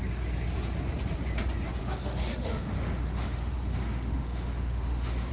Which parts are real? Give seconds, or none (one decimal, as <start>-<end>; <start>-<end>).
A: 0.0-1.8